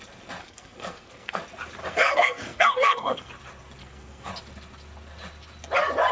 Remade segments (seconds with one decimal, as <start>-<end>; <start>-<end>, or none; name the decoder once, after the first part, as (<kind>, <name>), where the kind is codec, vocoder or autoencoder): 0.4-1.4 (codec, SNAC); 1.8-3.3; 3.8-4.3

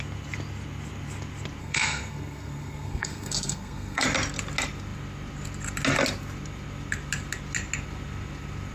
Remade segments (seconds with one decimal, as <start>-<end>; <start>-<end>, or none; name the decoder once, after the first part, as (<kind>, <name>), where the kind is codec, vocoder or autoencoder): 1.6-4.0 (codec, SNAC)

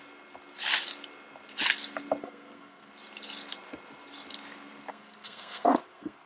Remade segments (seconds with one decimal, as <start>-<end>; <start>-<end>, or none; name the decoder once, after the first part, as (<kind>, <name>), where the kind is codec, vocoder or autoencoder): 2.2-2.9 (codec, SNAC); 4.9-6.3

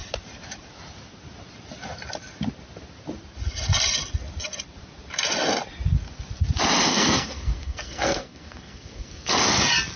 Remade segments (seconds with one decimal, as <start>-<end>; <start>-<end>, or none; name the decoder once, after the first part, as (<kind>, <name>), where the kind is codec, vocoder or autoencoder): 6.9-9.3 (codec, SNAC)

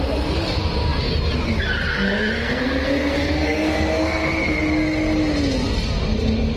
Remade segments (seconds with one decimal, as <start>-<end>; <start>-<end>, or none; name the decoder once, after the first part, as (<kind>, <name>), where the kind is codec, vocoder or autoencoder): 1.9-4.3 (codec, SNAC)

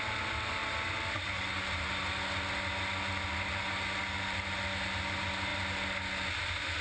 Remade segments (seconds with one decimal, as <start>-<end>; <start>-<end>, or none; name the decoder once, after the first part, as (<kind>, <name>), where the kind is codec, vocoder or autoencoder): none

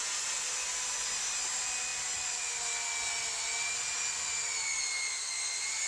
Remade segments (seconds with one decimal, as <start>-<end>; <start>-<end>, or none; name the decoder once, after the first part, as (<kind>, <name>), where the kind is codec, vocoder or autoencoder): none